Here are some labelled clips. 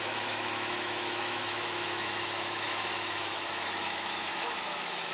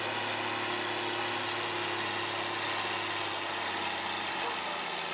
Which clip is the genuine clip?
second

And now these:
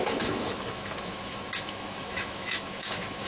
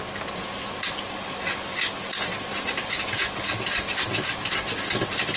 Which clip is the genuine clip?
second